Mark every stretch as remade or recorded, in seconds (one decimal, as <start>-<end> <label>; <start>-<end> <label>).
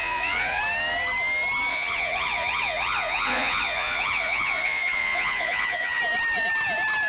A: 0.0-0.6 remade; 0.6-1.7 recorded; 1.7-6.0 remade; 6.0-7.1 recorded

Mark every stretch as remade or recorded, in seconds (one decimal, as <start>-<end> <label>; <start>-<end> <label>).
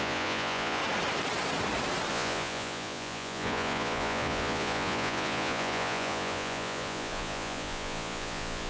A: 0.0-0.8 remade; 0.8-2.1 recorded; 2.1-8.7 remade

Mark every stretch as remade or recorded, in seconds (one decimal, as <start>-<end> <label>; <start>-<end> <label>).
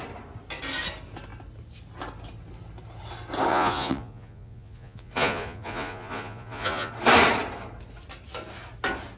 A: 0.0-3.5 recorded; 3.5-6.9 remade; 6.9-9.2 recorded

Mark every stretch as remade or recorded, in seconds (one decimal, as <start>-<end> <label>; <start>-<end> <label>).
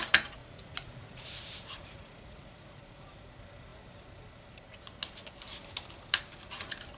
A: 0.0-0.4 recorded; 0.4-3.3 remade; 3.3-7.0 recorded